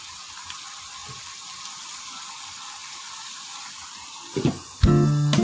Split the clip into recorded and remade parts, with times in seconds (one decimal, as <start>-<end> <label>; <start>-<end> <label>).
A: 0.0-1.0 recorded; 1.0-2.1 remade; 2.1-2.8 recorded; 2.8-4.0 remade; 4.0-5.4 recorded